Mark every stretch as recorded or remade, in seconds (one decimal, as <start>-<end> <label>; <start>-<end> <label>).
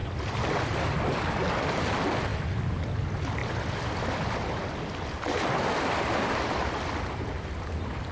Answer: 0.0-8.1 recorded